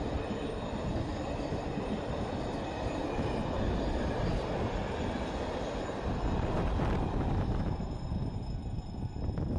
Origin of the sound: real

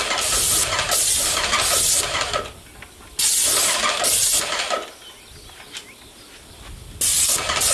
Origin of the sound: real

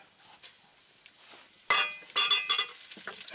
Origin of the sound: real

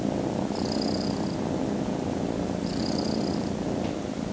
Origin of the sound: real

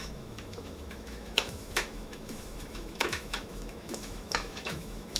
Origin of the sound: fake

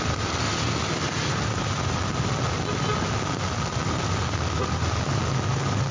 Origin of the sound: real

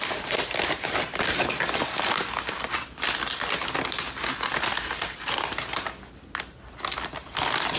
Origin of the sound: real